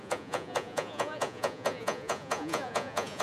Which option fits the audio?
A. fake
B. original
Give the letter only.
A